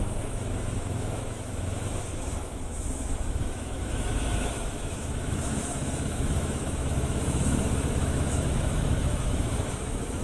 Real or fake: fake